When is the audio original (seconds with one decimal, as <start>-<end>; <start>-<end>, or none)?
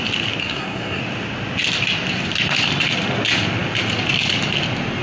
0.0-0.4; 1.0-5.0